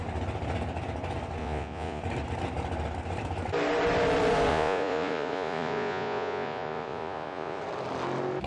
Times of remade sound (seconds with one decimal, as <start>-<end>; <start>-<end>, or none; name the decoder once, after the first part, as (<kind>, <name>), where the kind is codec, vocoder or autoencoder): 1.4-2.0 (vocoder, Vocos); 4.5-7.6